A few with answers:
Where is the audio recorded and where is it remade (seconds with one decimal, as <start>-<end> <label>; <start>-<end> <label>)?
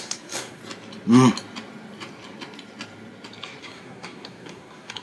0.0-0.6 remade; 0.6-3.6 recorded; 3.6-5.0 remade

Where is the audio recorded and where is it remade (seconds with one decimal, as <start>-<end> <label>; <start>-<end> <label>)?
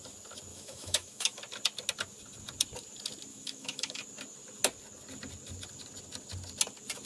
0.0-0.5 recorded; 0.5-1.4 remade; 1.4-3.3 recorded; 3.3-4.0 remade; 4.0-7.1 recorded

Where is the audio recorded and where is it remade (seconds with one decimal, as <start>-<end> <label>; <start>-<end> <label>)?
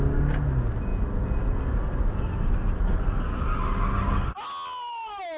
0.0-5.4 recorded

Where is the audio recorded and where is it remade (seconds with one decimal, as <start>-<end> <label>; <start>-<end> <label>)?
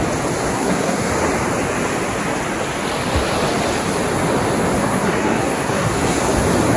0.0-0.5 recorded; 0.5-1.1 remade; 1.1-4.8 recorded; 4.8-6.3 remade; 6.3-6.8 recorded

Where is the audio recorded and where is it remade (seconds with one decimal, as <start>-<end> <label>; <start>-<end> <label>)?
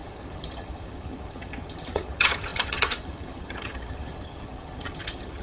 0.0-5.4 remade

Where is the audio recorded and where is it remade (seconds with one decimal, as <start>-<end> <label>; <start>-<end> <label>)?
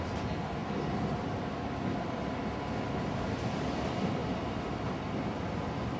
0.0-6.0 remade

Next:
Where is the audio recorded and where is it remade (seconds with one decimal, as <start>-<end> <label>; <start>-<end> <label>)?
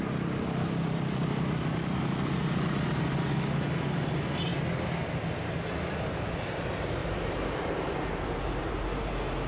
0.0-7.0 recorded; 7.0-9.1 remade; 9.1-9.5 recorded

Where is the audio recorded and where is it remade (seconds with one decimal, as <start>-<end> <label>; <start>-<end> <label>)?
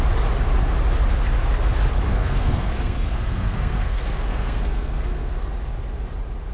0.0-2.1 recorded; 2.1-5.5 remade; 5.5-6.5 recorded